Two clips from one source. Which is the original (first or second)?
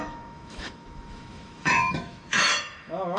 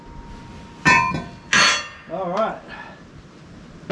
second